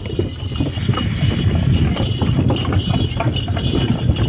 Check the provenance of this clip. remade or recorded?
recorded